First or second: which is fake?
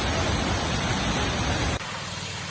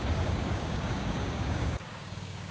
second